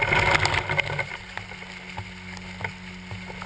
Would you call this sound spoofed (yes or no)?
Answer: no